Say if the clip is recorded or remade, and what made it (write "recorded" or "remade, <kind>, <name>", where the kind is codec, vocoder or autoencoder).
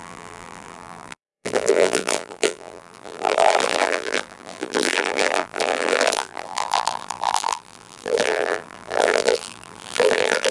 remade, vocoder, BigVGAN v2